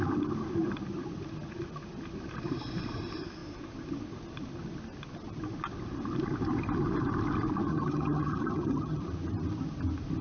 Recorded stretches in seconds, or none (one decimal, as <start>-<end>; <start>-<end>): 0.0-7.7; 9.0-10.2

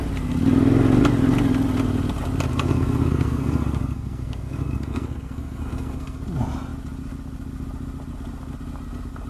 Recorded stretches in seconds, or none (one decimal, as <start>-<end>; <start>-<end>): 0.0-2.5; 6.2-9.3

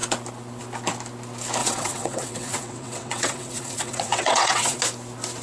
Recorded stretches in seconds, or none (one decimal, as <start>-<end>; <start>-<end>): 0.0-1.6; 4.8-5.4

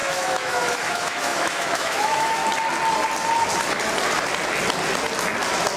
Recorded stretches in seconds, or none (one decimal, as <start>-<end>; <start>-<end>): 2.4-5.8

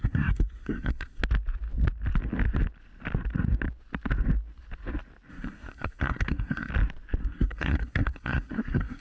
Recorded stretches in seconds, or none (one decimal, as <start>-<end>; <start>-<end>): 1.2-5.3; 6.7-7.2